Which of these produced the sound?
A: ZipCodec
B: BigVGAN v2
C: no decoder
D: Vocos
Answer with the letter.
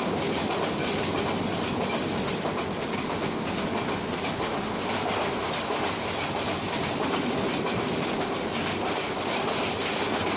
C